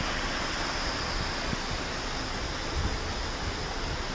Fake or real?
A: real